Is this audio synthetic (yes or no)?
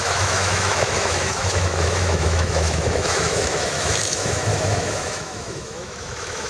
yes